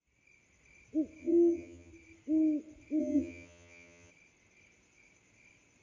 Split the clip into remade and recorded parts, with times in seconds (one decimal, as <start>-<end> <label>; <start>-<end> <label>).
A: 0.0-1.2 recorded; 1.2-1.9 remade; 1.9-3.0 recorded; 3.0-4.1 remade; 4.1-5.8 recorded